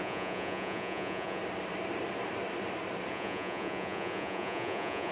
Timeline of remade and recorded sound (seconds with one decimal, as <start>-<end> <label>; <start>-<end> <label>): 0.0-1.4 remade; 1.4-3.1 recorded; 3.1-5.1 remade